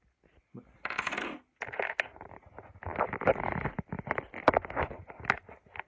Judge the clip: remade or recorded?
recorded